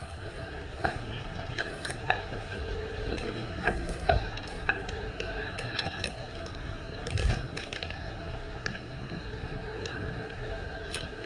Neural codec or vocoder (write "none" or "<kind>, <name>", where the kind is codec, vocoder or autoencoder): codec, SNAC